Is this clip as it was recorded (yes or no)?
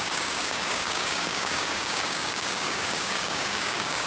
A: no